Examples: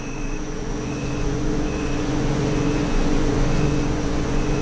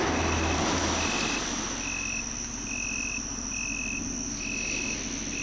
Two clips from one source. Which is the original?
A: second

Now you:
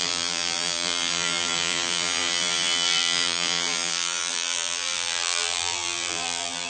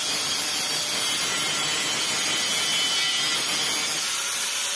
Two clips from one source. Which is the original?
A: second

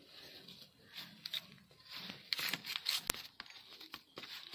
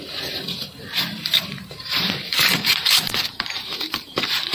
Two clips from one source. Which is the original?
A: first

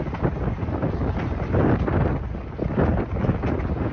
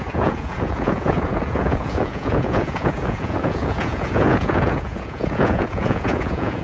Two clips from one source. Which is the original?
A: first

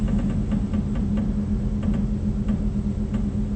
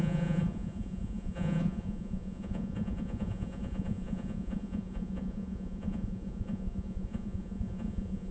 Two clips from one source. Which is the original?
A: first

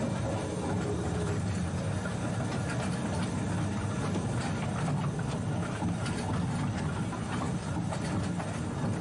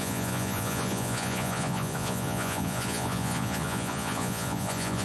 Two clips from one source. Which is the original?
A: first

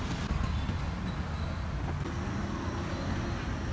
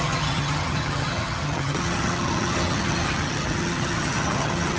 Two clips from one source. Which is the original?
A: first